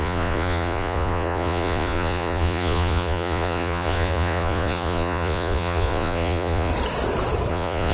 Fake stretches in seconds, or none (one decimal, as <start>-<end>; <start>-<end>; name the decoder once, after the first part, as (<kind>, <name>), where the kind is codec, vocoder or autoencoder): 0.0-6.7 (vocoder, Vocos); 7.5-7.9